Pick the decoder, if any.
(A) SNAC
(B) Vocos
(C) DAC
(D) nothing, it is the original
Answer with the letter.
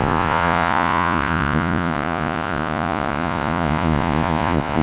B